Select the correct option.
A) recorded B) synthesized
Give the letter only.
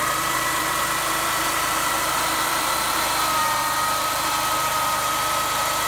B